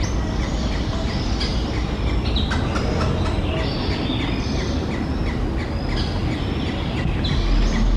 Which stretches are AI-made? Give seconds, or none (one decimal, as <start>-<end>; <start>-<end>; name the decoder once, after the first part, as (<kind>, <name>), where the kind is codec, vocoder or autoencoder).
none